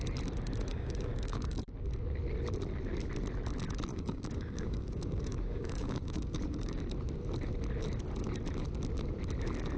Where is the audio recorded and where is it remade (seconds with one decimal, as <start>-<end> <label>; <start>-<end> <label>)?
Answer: 0.0-0.7 recorded; 0.7-1.6 remade; 1.6-3.9 recorded; 3.9-6.8 remade; 6.8-9.8 recorded